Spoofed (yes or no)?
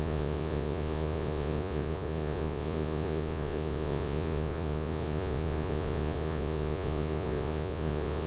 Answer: yes